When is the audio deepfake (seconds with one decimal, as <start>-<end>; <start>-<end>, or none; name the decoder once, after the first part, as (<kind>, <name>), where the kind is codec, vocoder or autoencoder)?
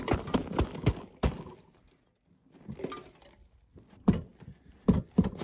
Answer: none